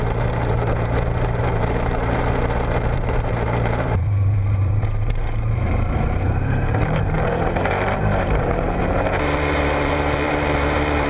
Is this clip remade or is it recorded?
remade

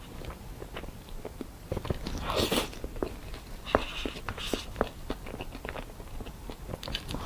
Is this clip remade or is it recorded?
recorded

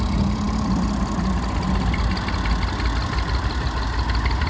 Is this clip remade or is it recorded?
recorded